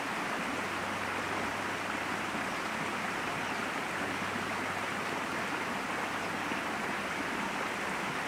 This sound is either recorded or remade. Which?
recorded